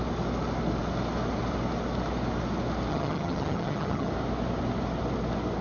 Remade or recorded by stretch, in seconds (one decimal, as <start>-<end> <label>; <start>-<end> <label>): 0.0-2.9 recorded; 2.9-4.1 remade; 4.1-5.6 recorded